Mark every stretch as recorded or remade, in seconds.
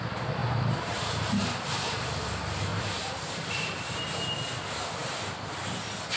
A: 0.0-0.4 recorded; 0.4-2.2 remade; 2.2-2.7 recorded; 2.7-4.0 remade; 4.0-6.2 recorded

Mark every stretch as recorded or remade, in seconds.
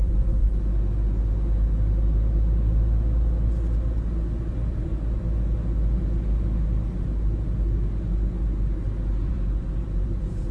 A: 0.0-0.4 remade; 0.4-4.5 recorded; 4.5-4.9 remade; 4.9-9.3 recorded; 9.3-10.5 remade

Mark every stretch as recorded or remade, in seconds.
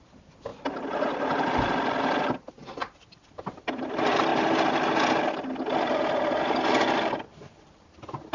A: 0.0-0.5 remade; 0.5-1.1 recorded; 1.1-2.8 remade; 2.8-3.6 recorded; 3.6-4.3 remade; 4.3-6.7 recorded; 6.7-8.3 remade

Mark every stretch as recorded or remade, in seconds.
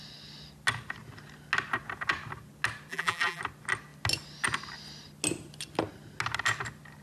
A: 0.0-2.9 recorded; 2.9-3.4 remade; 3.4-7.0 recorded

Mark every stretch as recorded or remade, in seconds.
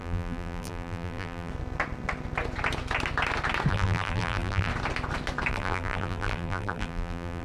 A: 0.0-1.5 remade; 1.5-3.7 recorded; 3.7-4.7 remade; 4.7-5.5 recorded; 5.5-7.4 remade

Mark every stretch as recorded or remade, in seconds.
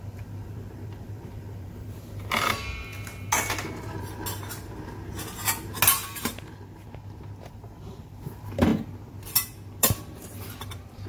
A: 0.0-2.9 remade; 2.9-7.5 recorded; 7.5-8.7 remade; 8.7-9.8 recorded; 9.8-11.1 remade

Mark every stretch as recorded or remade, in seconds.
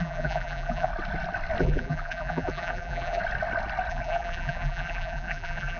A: 0.0-0.9 remade; 0.9-1.6 recorded; 1.6-3.2 remade; 3.2-3.9 recorded; 3.9-5.8 remade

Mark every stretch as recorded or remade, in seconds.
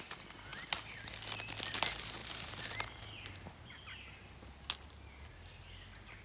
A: 0.0-2.2 recorded; 2.2-3.0 remade; 3.0-6.2 recorded